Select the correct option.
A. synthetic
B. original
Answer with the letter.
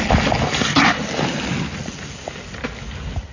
B